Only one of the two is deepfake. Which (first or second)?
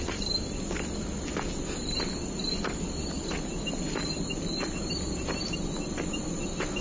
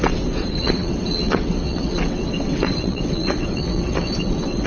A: second